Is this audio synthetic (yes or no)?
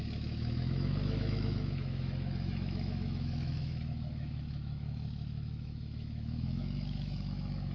yes